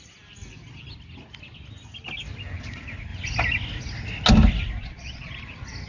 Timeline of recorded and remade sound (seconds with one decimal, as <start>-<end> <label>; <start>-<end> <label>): 0.0-4.8 recorded; 4.8-5.3 remade; 5.3-5.9 recorded